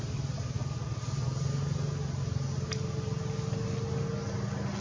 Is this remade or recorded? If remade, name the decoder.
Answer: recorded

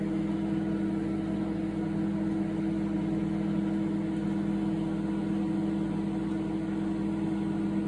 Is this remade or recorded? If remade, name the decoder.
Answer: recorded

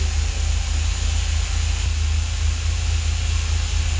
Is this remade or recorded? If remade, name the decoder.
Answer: recorded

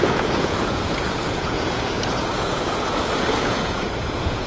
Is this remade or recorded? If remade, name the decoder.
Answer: remade, vocoder, Vocos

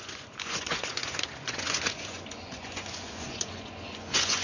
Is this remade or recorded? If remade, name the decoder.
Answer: remade, vocoder, Vocos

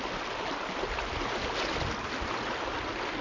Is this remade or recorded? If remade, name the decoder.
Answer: recorded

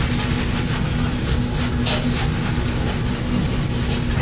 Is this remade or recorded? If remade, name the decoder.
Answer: recorded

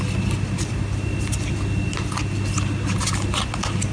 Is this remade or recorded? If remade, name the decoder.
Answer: recorded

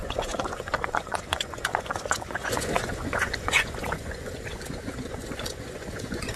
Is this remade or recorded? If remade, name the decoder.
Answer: remade, vocoder, Vocos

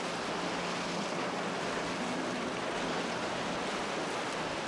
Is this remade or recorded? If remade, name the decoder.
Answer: recorded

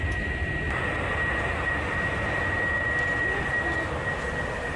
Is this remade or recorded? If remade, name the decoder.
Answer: recorded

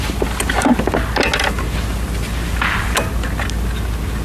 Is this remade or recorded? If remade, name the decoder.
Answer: recorded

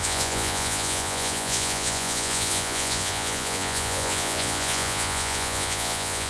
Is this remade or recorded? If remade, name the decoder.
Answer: remade, vocoder, Vocos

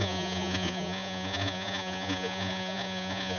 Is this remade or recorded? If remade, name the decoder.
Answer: remade, vocoder, Vocos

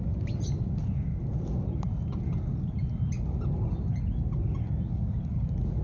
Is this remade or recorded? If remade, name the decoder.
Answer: recorded